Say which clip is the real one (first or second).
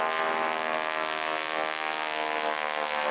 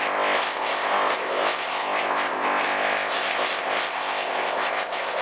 first